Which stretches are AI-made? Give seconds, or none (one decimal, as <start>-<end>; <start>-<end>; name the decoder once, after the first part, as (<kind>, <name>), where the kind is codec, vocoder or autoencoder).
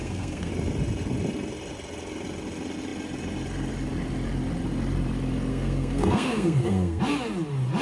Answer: 0.0-0.5 (codec, SNAC); 5.5-7.0